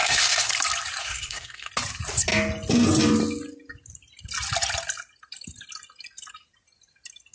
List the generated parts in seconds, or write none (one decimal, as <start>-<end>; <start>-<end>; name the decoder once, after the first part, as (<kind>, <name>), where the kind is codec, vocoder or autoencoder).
0.0-0.5 (codec, SNAC); 1.0-1.7